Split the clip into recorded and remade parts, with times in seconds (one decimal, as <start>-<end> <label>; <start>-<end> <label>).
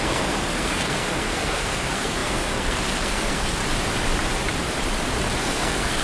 0.0-3.6 remade; 3.6-5.4 recorded; 5.4-6.0 remade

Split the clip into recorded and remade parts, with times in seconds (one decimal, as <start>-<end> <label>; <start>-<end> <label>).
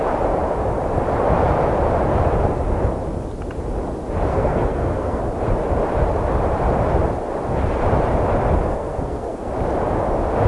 0.0-4.3 recorded; 4.3-5.2 remade; 5.2-8.7 recorded; 8.7-9.5 remade; 9.5-10.5 recorded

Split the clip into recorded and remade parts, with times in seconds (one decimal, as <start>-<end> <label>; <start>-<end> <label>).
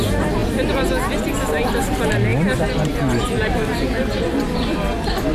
0.0-5.3 recorded